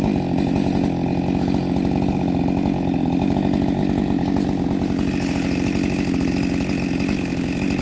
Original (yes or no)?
yes